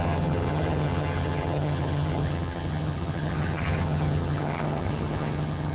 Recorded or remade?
remade